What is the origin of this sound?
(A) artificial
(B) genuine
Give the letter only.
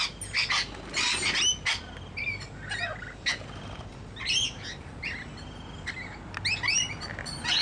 B